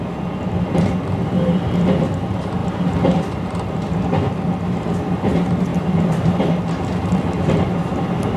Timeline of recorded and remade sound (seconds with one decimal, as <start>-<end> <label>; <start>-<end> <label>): 0.0-2.6 recorded; 2.6-4.0 remade; 4.0-5.7 recorded; 5.7-6.6 remade; 6.6-8.4 recorded